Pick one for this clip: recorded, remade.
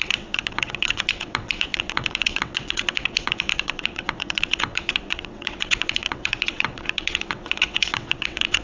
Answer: remade